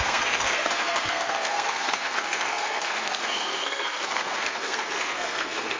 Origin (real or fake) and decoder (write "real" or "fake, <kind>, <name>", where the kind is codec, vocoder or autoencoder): fake, codec, SNAC